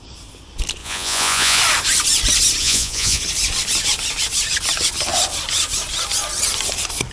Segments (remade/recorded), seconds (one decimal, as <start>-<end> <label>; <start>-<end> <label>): 0.0-0.8 recorded; 0.8-1.6 remade; 1.6-2.6 recorded; 2.6-3.2 remade; 3.2-7.1 recorded